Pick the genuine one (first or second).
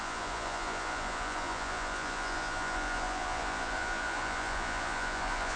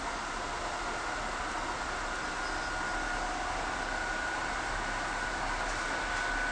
second